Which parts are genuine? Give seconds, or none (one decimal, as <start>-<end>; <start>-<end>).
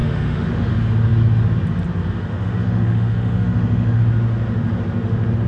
0.7-2.3; 4.0-5.5